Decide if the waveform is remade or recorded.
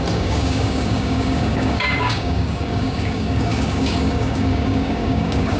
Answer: remade